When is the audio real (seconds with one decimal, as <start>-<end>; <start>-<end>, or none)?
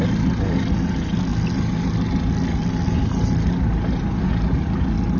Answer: 0.0-5.2